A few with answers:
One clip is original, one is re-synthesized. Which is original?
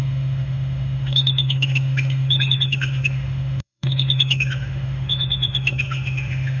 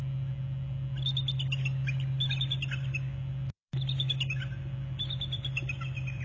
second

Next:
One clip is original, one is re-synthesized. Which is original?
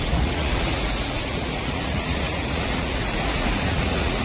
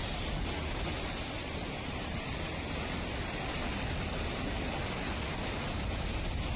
second